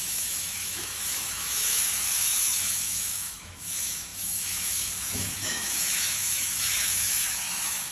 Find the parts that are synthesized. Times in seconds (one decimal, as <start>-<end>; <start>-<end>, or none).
0.0-7.9